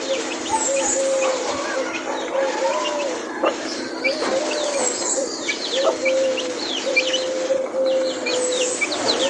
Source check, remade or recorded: remade